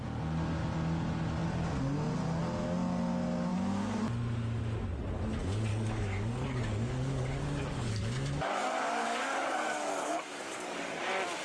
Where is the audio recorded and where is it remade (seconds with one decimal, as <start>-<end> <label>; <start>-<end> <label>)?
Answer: 0.0-3.5 recorded; 3.5-4.0 remade; 4.0-5.7 recorded; 5.7-11.0 remade; 11.0-11.4 recorded